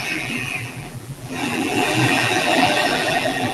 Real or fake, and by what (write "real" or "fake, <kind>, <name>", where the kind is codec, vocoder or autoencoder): fake, vocoder, BigVGAN v2